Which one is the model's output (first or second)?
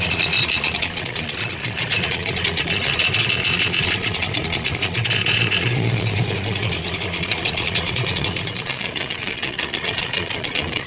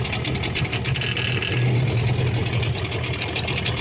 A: first